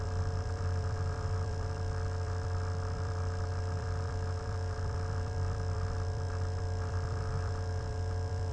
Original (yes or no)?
no